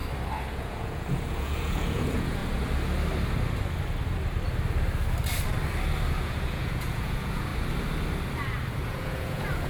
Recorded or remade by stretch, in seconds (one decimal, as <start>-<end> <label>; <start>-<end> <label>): 0.0-0.5 recorded; 0.5-2.4 remade; 2.4-6.1 recorded; 6.1-7.5 remade; 7.5-8.7 recorded; 8.7-9.7 remade